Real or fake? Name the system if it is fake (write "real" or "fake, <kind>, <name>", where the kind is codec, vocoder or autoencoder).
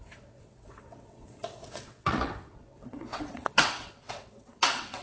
fake, vocoder, WaveNeXt